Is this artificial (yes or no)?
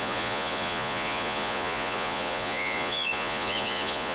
yes